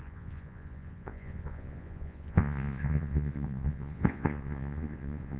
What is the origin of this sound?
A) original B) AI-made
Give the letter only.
B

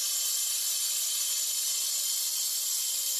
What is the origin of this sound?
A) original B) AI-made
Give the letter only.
A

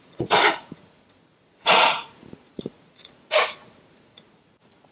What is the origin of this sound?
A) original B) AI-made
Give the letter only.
B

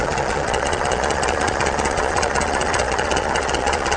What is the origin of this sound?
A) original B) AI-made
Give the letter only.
B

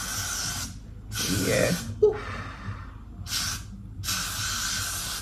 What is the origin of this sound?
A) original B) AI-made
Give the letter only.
A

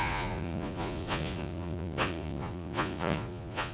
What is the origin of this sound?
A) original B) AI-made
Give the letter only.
B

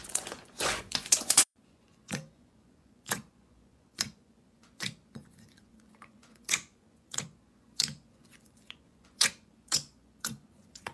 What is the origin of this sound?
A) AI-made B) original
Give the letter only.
A